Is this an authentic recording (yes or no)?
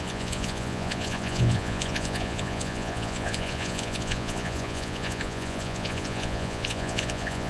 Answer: no